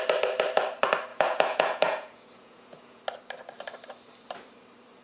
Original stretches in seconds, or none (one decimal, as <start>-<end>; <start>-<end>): 0.0-1.1; 3.0-5.0